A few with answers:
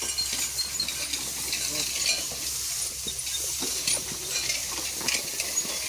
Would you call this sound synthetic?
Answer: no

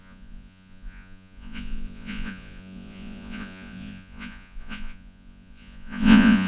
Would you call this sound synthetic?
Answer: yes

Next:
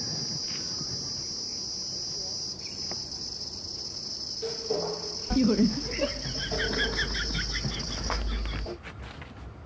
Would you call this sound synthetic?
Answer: no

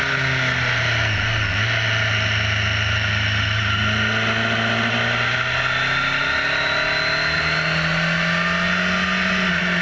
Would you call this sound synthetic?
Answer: no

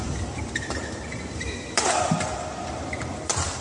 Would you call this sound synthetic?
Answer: yes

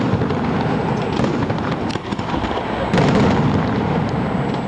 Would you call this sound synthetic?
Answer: no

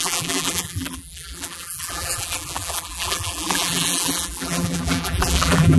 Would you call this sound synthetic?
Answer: yes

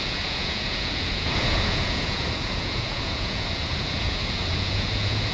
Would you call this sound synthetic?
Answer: yes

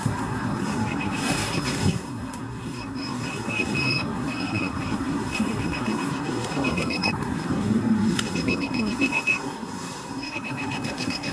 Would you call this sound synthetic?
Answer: yes